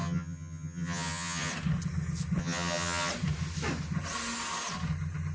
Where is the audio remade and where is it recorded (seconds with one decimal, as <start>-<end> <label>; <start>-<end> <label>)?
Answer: 0.0-1.5 remade; 1.5-2.4 recorded; 2.4-3.1 remade; 3.1-5.3 recorded